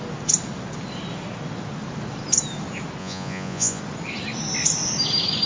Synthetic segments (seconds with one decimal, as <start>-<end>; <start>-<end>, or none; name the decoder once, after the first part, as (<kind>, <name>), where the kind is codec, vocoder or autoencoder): 3.0-3.8 (vocoder, Vocos)

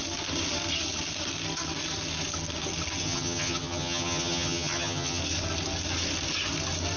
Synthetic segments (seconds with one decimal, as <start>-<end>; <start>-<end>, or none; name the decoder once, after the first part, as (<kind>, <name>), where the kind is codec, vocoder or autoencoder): 3.0-5.2 (vocoder, HiFi-GAN)

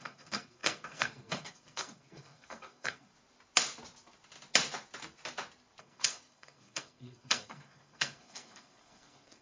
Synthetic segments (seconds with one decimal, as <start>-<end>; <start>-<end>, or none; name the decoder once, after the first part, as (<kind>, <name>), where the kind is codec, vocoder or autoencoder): 0.0-3.1 (codec, SNAC); 5.8-9.4

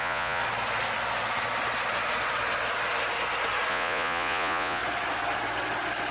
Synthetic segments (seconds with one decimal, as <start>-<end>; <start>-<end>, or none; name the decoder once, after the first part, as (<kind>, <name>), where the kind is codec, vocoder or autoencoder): 0.0-0.4 (vocoder, Vocos); 3.7-4.8